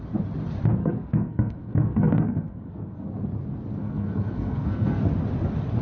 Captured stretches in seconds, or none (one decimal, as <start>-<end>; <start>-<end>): 0.0-0.8; 3.1-3.8; 5.0-5.8